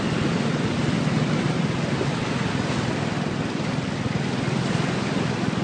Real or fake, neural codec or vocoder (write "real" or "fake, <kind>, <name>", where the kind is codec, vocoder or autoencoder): real